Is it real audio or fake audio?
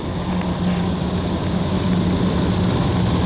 real